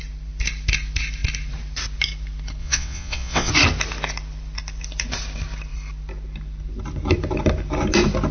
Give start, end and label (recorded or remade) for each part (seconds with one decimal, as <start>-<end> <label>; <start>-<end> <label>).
0.0-2.6 recorded; 2.6-3.5 remade; 3.5-8.3 recorded